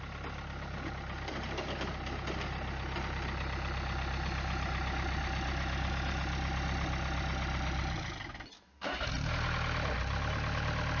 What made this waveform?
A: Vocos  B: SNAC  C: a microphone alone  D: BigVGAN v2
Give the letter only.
C